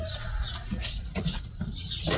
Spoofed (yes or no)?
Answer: yes